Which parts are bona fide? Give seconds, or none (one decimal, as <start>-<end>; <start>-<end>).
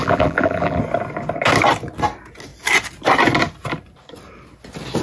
0.8-5.0